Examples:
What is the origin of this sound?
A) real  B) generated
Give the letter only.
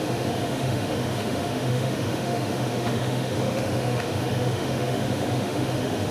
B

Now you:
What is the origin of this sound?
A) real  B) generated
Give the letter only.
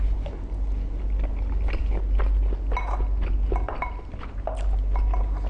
A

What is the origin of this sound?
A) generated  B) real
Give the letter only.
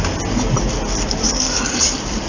B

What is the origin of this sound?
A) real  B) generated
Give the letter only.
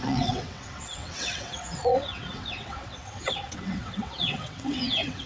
B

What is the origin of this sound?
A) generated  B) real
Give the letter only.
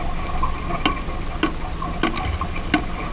B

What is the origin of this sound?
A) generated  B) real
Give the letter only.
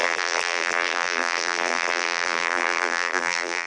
A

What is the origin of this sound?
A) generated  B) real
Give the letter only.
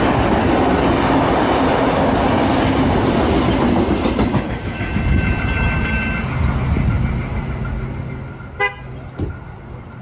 B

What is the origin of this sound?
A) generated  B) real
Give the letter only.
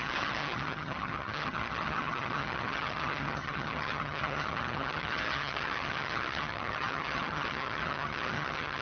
A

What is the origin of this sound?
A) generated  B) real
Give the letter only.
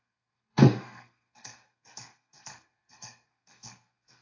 A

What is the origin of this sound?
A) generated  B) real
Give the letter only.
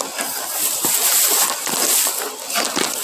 B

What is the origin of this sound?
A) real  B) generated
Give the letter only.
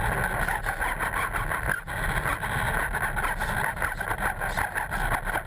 A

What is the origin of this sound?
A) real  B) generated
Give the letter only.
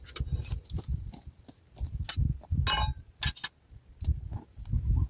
A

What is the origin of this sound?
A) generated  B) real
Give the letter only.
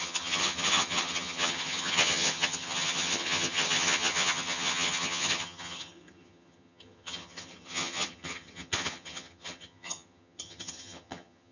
A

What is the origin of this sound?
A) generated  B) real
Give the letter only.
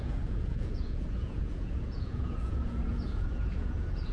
A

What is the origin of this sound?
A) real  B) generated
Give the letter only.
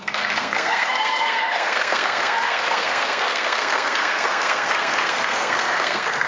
B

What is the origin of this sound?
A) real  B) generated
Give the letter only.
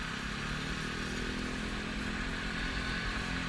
A